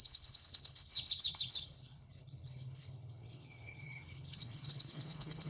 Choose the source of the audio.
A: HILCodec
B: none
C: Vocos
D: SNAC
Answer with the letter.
A